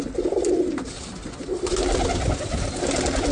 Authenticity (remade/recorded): recorded